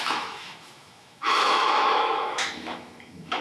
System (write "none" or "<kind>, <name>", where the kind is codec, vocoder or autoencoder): autoencoder, DAC-VAE